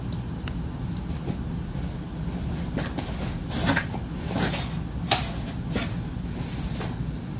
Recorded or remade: recorded